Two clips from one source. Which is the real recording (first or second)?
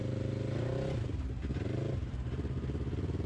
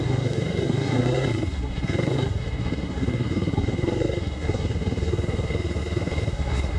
first